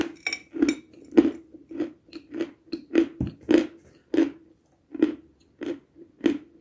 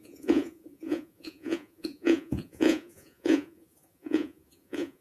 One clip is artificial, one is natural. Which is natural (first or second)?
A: first